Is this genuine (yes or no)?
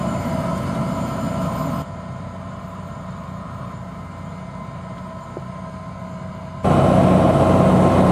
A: yes